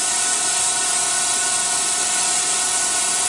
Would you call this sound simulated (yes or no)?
no